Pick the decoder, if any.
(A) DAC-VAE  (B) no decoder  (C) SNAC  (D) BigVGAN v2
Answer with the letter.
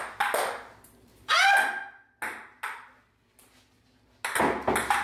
B